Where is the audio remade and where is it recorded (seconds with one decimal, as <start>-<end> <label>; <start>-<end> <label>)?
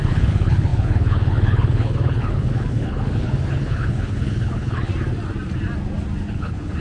0.0-4.9 remade; 4.9-6.3 recorded; 6.3-6.8 remade